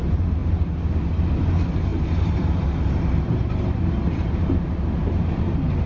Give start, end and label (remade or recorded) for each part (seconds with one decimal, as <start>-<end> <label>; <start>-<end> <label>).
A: 0.0-5.9 recorded